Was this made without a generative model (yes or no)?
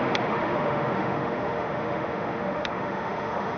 no